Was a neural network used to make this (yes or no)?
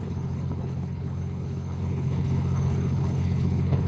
yes